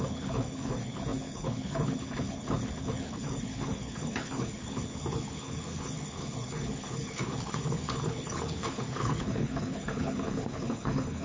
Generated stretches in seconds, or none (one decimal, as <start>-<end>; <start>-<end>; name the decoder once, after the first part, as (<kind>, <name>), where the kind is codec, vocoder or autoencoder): 0.0-11.2 (codec, HILCodec)